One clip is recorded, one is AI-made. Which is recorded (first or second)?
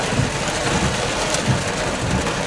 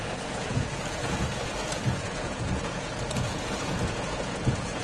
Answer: first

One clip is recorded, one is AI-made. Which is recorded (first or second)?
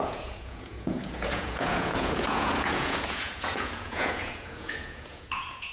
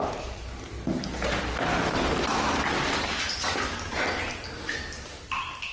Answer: second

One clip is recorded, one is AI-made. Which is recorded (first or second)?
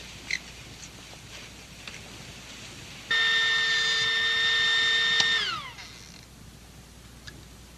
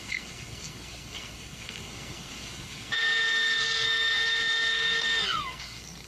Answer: first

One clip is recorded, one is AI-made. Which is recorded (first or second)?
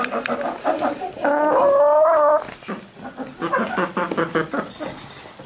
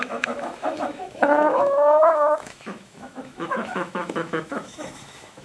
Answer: first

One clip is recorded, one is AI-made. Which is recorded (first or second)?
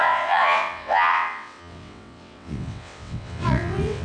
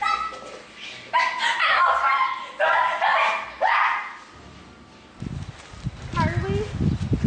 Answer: second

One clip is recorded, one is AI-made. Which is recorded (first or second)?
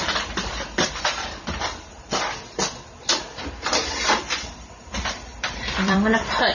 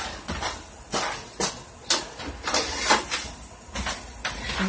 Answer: second